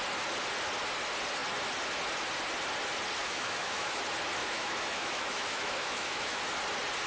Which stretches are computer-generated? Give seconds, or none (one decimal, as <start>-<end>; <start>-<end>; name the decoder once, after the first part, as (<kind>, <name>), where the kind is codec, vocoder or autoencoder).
3.2-4.0 (autoencoder, DAC-VAE); 4.4-6.4